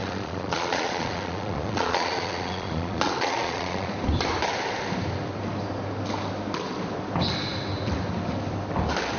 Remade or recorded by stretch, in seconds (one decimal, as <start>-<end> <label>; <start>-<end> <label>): 0.0-3.9 remade; 3.9-9.2 recorded